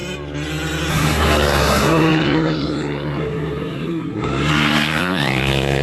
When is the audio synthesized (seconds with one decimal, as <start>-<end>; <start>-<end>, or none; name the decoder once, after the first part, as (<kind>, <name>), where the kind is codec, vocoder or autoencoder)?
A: 0.9-5.8 (codec, SNAC)